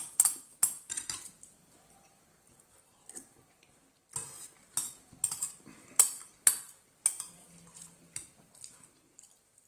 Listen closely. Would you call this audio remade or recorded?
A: recorded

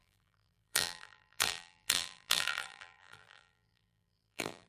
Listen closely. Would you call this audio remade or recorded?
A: remade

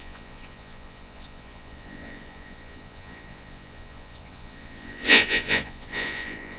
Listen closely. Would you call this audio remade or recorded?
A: remade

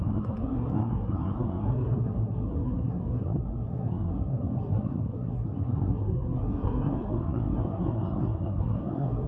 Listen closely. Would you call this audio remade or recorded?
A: remade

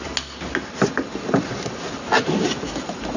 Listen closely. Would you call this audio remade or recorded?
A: recorded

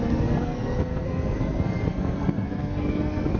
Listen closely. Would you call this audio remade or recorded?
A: remade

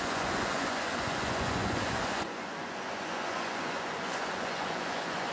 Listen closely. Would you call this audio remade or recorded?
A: remade